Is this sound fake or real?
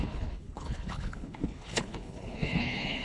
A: fake